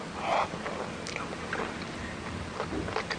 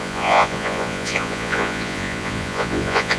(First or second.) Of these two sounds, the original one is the first